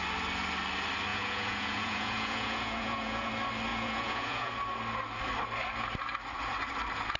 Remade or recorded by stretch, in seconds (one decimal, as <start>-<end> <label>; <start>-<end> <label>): 0.0-1.1 recorded; 1.1-3.3 remade; 3.3-3.7 recorded; 3.7-4.5 remade; 4.5-7.2 recorded